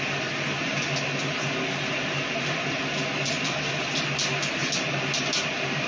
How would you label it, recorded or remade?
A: recorded